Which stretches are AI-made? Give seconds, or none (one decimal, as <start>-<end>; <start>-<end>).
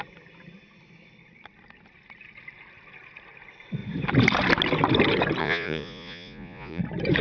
5.4-6.8